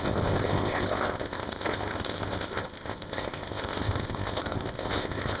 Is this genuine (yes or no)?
no